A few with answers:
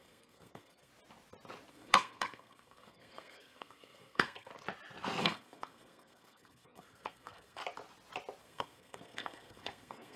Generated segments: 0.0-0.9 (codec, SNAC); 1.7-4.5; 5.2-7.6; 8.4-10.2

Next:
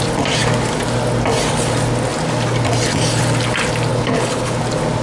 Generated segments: 3.9-4.6 (codec, HILCodec)

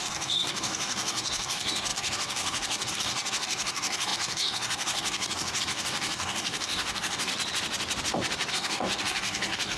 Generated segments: 0.0-7.3 (codec, DAC); 8.5-9.8